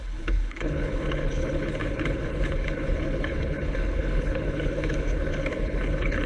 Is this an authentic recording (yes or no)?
no